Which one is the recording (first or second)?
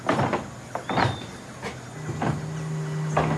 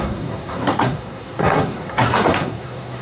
first